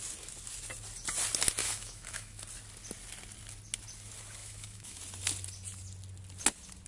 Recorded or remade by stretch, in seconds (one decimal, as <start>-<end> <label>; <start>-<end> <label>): 0.0-1.6 recorded; 1.6-2.4 remade; 2.4-4.4 recorded; 4.4-5.0 remade; 5.0-6.9 recorded